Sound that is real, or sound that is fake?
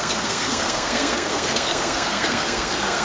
fake